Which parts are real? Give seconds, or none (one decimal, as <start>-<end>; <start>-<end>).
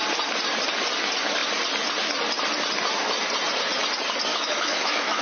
0.0-4.3